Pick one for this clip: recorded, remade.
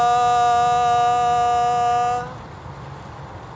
recorded